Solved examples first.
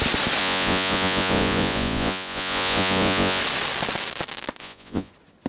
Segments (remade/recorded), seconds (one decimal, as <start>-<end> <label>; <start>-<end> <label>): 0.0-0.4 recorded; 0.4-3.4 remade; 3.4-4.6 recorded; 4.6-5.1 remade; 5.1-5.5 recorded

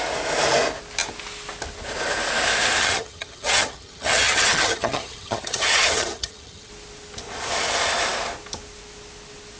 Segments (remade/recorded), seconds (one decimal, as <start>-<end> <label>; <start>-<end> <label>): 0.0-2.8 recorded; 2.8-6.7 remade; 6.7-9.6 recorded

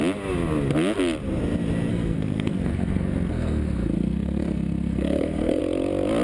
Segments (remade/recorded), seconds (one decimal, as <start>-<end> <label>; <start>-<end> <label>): 0.0-1.9 recorded; 1.9-5.6 remade; 5.6-6.2 recorded

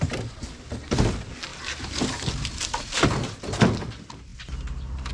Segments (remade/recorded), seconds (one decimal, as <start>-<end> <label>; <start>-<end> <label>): 0.0-5.1 recorded

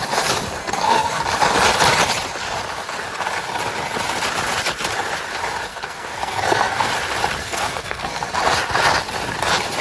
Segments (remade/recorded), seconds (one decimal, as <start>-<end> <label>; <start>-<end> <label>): 0.0-0.6 recorded; 0.6-1.2 remade; 1.2-5.7 recorded; 5.7-6.9 remade; 6.9-7.4 recorded; 7.4-8.4 remade; 8.4-9.8 recorded

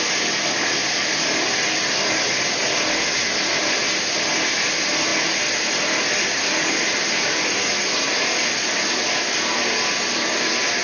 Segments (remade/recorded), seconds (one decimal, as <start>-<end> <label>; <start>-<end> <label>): 0.0-10.8 recorded

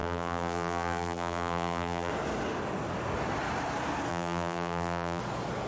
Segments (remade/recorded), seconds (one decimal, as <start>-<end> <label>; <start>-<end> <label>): 0.0-2.1 remade; 2.1-4.1 recorded; 4.1-5.2 remade; 5.2-5.7 recorded

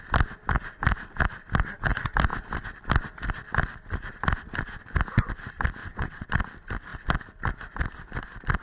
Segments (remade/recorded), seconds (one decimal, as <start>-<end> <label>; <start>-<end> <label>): 0.0-5.8 recorded; 5.8-6.3 remade; 6.3-8.6 recorded